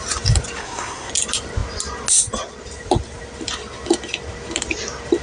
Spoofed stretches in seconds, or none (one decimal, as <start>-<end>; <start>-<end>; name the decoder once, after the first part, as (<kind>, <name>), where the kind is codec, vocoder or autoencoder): 0.6-1.1 (codec, SNAC)